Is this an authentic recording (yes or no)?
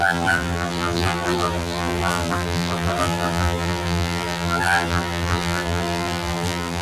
no